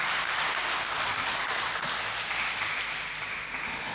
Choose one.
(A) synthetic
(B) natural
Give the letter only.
B